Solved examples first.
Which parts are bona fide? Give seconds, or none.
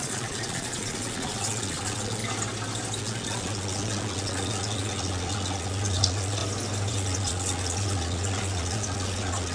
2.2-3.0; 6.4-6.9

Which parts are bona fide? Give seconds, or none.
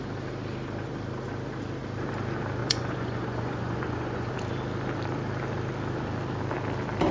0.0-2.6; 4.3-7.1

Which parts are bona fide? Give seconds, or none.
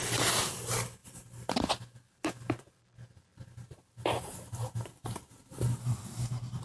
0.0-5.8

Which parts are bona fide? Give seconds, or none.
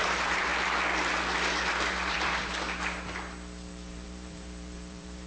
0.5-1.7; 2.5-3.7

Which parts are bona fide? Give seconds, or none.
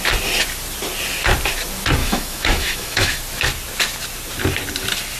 0.0-2.0; 3.2-5.2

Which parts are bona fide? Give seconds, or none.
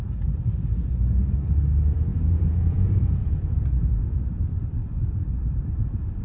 0.0-2.1; 4.2-6.2